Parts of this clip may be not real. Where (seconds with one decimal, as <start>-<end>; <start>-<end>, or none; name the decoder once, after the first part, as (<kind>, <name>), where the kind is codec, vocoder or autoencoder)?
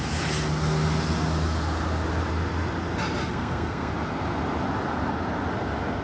3.2-3.9 (codec, SNAC)